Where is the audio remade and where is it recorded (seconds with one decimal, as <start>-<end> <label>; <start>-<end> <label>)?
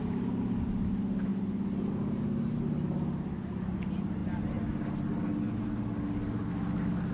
0.0-7.1 recorded